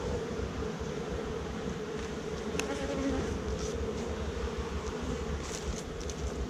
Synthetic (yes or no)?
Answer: no